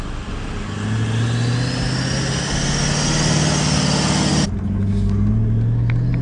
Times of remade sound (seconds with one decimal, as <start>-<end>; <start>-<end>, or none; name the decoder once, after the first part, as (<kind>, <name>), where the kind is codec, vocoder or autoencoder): none